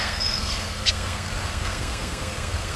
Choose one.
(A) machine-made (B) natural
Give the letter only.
A